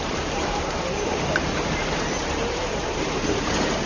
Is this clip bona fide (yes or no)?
no